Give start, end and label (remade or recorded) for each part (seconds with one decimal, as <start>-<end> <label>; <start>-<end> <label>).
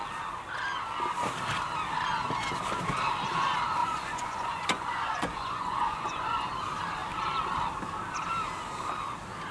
0.0-3.8 recorded; 3.8-6.5 remade; 6.5-9.5 recorded